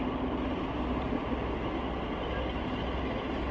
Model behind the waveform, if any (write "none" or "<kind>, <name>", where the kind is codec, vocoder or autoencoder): none